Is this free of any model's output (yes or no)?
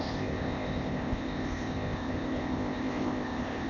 no